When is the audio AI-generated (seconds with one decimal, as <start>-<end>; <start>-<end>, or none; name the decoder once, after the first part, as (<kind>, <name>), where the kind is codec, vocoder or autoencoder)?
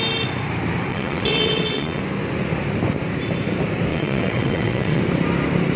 0.9-2.0 (vocoder, WaveNeXt); 3.9-5.0